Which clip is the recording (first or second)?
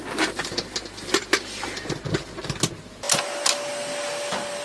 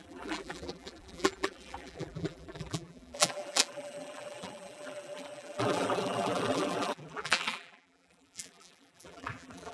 first